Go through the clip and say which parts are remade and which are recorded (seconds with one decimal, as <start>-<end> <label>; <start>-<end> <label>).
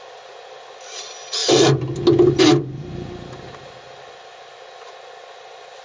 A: 0.0-5.8 recorded